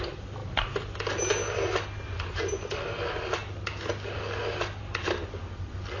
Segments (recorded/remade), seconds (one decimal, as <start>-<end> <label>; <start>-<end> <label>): 0.0-6.0 recorded